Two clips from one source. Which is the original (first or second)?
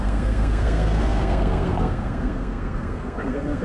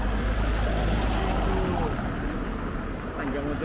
second